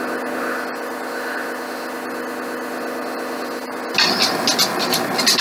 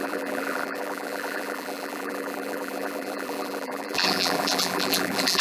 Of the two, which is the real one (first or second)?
first